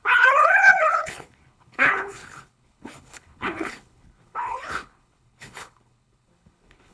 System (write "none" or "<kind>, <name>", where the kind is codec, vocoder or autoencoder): codec, HILCodec